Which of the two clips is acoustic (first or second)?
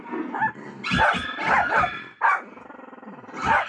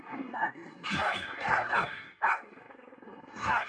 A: first